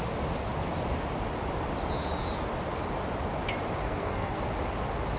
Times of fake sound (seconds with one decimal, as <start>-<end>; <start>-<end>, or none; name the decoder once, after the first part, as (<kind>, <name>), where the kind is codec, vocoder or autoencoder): 3.8-4.4 (codec, SNAC)